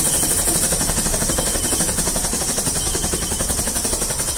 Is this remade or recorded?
remade